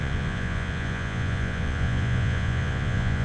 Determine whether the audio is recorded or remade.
remade